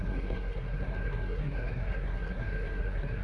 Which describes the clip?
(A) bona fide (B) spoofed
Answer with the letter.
B